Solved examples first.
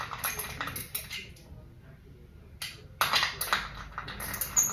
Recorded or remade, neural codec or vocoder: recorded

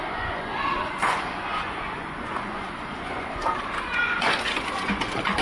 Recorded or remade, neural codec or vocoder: remade, vocoder, Vocos